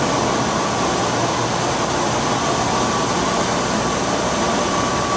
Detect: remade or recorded recorded